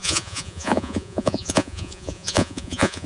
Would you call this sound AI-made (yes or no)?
yes